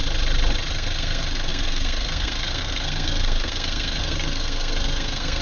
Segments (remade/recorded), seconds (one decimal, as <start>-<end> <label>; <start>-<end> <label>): 0.0-0.7 recorded; 0.7-5.4 remade

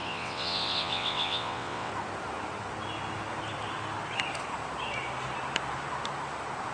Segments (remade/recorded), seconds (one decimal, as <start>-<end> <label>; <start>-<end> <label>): 0.0-1.9 remade; 1.9-6.7 recorded

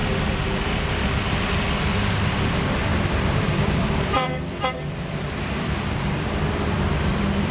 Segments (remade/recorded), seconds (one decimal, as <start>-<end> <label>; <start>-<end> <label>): 0.0-0.6 remade; 0.6-2.9 recorded; 2.9-7.5 remade

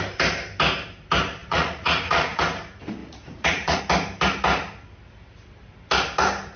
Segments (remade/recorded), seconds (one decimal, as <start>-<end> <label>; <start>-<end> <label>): 0.0-1.4 recorded; 1.4-2.4 remade; 2.4-3.0 recorded; 3.0-3.8 remade; 3.8-6.6 recorded